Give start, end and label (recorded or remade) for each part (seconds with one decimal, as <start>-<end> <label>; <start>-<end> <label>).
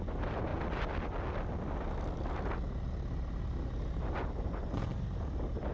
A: 0.0-0.5 remade; 0.5-3.9 recorded; 3.9-5.7 remade